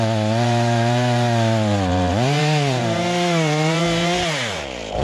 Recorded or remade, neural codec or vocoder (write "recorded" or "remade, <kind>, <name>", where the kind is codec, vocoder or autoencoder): remade, vocoder, BigVGAN v2